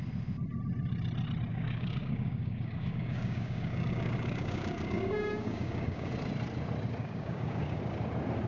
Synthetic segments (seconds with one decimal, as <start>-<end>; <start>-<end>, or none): 1.5-6.1; 7.0-7.8